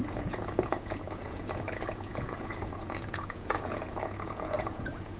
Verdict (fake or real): fake